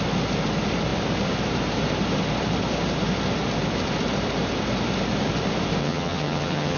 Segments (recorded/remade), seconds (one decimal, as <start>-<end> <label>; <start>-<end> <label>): 0.0-5.8 recorded; 5.8-6.8 remade